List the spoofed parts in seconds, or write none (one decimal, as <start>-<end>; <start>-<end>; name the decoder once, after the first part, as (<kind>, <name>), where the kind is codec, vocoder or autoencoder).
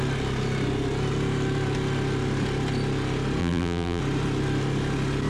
3.4-4.0 (vocoder, BigVGAN v2)